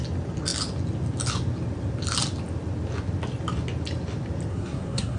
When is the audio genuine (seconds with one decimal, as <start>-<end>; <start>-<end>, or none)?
0.0-4.5

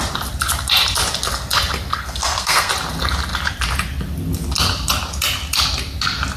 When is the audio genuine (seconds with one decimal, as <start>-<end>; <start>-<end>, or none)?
0.0-1.9; 2.7-6.4

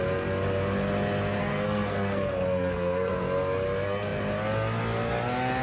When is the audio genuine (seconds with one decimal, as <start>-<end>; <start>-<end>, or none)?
0.0-1.4; 3.1-5.6

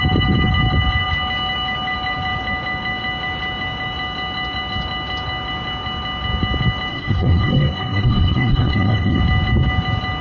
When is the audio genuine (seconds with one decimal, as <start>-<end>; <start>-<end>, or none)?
0.0-6.9; 9.2-10.2

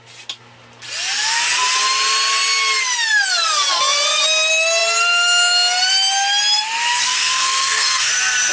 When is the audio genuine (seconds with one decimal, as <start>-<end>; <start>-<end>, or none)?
0.0-7.0; 8.1-8.5

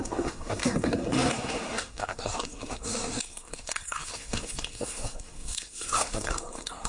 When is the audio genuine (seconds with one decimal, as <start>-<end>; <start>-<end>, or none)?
none

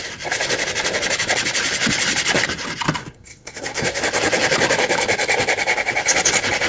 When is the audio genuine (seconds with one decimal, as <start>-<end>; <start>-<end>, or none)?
0.0-3.0; 4.0-6.7

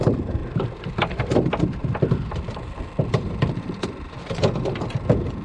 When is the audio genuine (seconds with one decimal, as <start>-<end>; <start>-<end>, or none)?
0.0-5.4